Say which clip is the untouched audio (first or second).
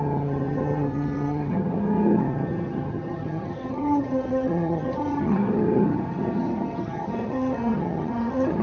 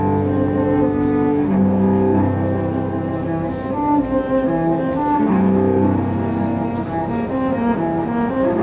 second